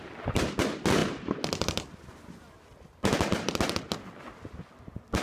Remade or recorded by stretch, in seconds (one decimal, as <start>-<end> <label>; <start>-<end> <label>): 0.0-5.2 recorded